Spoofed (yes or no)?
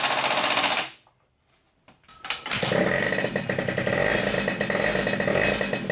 no